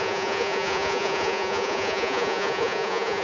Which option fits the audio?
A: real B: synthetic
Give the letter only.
B